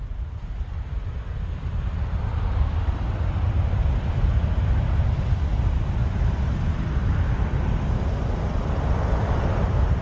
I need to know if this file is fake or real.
real